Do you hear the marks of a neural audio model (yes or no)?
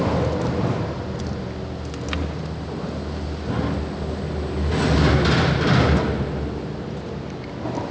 no